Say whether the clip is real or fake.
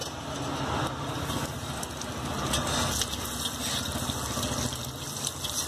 real